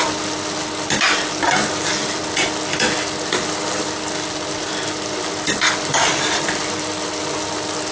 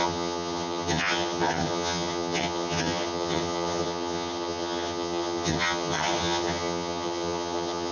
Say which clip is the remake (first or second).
second